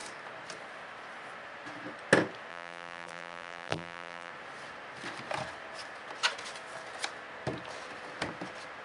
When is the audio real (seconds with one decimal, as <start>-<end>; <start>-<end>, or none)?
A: 0.0-2.5; 4.3-8.8

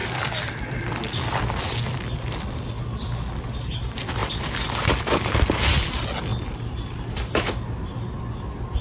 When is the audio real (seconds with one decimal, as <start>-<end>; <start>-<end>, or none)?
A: 2.6-8.8